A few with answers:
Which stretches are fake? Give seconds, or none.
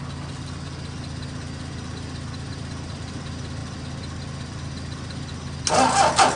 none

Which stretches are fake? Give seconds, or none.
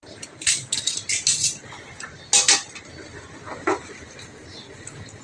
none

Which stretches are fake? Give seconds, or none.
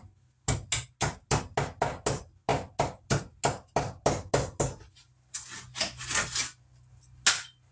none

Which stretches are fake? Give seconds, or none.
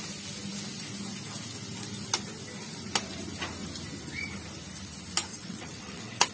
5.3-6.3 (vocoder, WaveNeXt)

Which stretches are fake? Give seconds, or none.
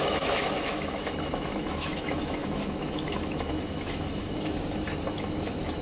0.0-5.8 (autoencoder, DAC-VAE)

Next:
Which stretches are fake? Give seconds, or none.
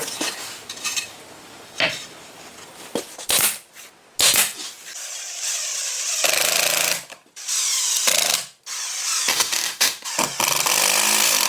9.3-10.1 (autoencoder, DAC-VAE)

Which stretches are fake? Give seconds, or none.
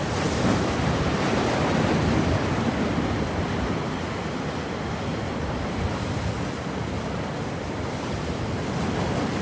none